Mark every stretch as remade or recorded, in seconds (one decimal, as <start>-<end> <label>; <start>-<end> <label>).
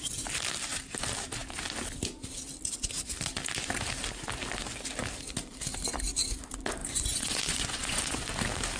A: 0.0-6.8 recorded; 6.8-8.2 remade; 8.2-8.8 recorded